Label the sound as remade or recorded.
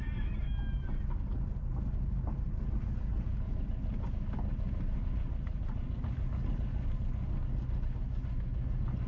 recorded